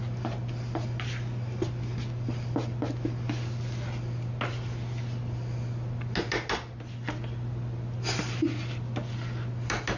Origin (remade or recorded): recorded